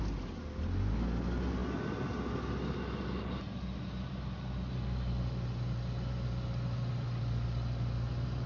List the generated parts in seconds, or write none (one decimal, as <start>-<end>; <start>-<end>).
none